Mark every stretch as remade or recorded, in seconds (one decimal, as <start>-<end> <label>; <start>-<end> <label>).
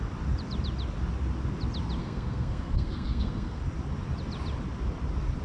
0.0-2.0 recorded; 2.0-3.6 remade; 3.6-5.4 recorded